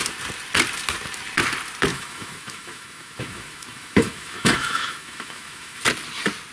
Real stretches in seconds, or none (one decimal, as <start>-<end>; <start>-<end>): 0.0-1.9; 5.8-6.5